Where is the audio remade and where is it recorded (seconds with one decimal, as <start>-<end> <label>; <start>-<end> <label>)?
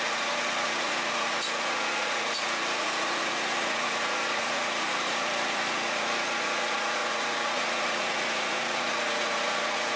0.0-10.0 remade